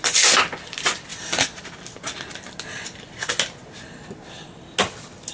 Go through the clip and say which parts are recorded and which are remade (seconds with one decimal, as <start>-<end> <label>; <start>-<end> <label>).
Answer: 0.0-5.3 recorded